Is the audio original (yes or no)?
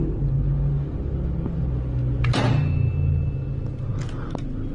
yes